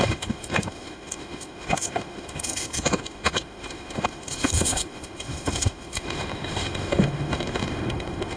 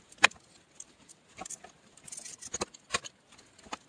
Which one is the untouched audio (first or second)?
second